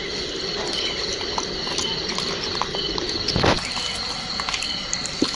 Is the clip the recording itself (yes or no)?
yes